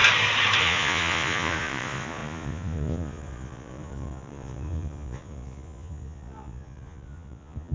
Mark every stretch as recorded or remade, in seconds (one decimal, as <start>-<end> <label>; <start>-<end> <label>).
0.0-0.6 recorded; 0.6-7.7 remade